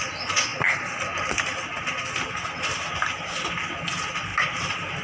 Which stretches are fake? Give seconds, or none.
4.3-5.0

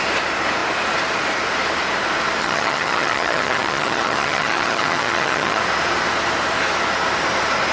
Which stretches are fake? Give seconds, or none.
2.4-5.6

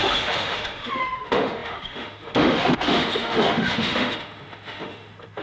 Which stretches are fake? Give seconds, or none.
0.0-5.4

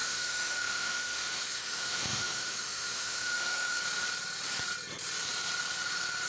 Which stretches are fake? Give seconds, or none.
0.0-3.8